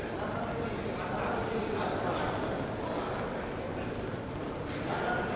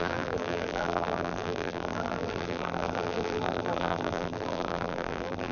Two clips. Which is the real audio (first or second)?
first